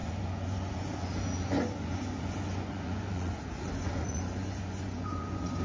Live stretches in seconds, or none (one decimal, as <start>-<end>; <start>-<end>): none